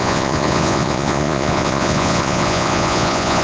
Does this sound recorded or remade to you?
remade